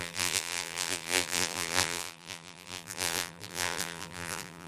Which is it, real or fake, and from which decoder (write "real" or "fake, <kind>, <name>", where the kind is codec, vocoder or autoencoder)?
fake, vocoder, BigVGAN v2